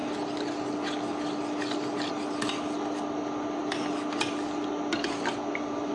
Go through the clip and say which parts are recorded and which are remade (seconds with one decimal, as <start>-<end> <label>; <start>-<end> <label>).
0.0-5.9 recorded